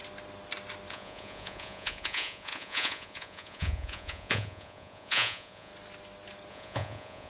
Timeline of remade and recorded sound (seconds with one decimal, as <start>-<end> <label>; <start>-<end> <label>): 0.0-0.9 recorded; 0.9-5.7 remade; 5.7-6.5 recorded; 6.5-7.3 remade